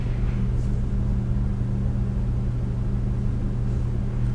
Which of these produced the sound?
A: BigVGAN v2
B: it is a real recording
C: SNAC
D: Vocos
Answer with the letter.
B